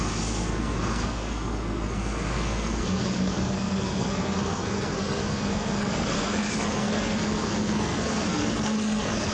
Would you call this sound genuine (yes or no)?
no